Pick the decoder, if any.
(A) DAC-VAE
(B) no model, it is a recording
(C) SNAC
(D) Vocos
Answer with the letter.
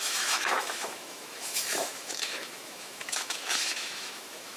A